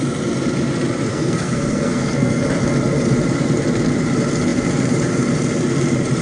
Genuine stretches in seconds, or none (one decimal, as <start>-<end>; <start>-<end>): 0.0-1.1; 2.4-6.2